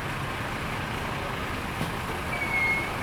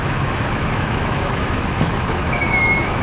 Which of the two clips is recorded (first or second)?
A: first